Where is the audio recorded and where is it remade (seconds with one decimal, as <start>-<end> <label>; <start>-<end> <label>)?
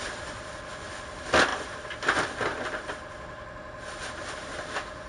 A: 0.0-5.1 recorded